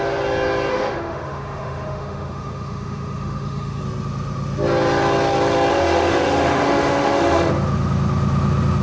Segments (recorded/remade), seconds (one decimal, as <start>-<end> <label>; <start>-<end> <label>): 0.0-0.7 recorded; 0.7-3.8 remade; 3.8-5.7 recorded; 5.7-7.5 remade; 7.5-8.8 recorded